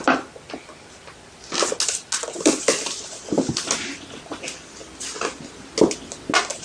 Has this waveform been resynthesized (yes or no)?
no